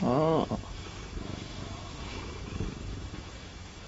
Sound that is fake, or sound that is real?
fake